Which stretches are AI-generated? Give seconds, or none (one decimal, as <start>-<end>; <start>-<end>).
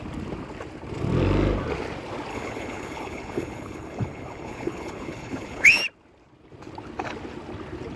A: 2.3-5.8